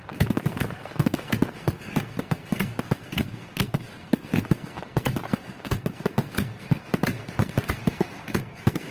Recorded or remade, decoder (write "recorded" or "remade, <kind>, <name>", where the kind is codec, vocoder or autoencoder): remade, codec, SNAC